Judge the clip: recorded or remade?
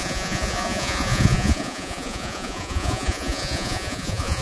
remade